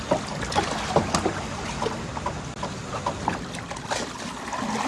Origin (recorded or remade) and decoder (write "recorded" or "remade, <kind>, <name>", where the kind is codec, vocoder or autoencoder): recorded